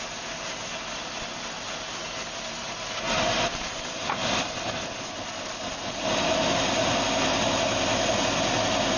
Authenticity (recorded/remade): recorded